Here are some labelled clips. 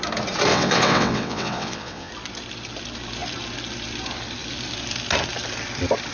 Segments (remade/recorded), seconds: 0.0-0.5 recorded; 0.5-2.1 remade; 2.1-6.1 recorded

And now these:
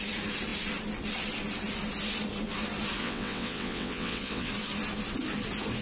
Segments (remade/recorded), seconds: 0.0-3.0 recorded; 3.0-4.5 remade; 4.5-5.8 recorded

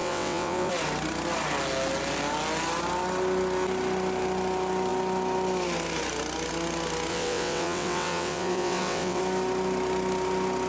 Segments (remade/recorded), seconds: 0.0-0.7 remade; 0.7-7.1 recorded; 7.1-9.2 remade; 9.2-10.7 recorded

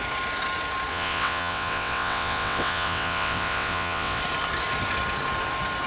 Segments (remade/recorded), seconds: 0.0-0.9 recorded; 0.9-4.2 remade; 4.2-5.9 recorded